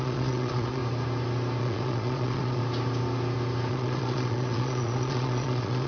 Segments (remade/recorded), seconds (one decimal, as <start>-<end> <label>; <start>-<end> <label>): 0.0-0.8 remade; 0.8-1.6 recorded; 1.6-2.6 remade; 2.6-3.7 recorded; 3.7-5.9 remade